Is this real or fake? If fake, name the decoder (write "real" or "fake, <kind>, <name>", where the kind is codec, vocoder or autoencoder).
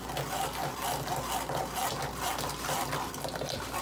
real